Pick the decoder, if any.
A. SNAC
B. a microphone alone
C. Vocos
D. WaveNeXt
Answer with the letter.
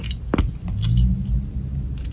B